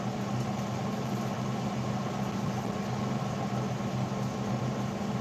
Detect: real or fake real